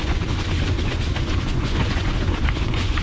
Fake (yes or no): yes